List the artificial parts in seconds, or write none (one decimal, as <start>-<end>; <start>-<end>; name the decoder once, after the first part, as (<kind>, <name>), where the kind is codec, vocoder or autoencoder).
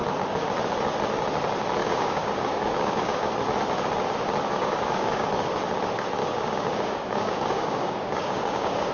1.8-3.3 (codec, DAC); 4.5-5.3; 6.2-8.9